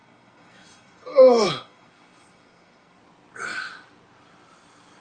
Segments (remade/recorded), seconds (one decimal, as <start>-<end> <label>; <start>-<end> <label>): 0.0-3.0 remade; 3.0-5.0 recorded